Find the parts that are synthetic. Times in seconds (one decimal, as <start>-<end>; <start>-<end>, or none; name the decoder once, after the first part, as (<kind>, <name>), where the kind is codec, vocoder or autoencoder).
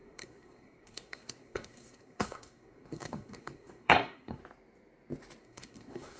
0.0-4.4 (codec, SNAC); 5.4-6.2